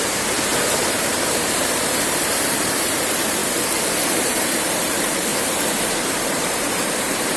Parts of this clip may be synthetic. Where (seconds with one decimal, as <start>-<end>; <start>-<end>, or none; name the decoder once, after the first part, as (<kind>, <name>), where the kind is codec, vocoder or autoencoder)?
0.0-0.5 (vocoder, BigVGAN v2); 1.2-3.4; 3.9-5.3; 6.1-7.4